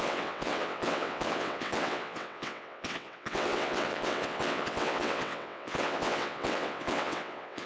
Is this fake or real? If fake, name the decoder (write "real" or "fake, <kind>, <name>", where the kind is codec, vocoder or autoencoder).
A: fake, vocoder, WaveNeXt